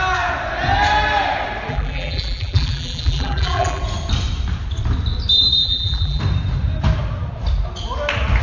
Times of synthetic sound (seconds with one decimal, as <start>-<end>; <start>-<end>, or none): 1.7-3.8; 5.6-6.2